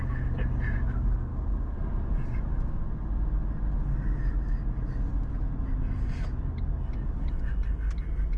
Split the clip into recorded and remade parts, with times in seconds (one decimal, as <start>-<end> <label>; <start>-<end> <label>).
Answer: 0.0-8.4 recorded